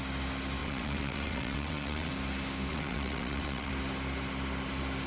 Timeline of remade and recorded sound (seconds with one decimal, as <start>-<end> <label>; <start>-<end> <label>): 0.0-0.6 recorded; 0.6-2.1 remade; 2.1-2.7 recorded; 2.7-3.7 remade; 3.7-5.1 recorded